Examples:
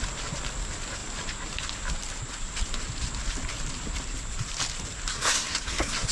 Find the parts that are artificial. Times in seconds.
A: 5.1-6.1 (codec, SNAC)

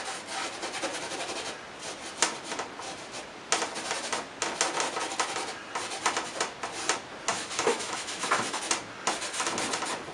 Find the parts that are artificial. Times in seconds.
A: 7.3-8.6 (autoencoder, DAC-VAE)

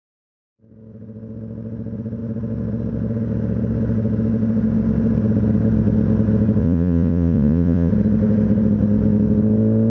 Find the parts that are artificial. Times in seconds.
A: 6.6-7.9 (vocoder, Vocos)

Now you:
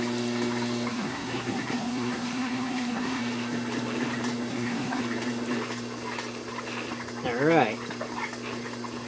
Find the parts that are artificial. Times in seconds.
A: 0.9-3.2 (codec, SNAC); 4.5-5.0

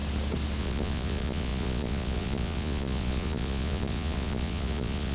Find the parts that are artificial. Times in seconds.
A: 0.6-5.1 (vocoder, Vocos)